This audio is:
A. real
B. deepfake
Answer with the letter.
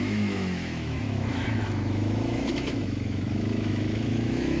B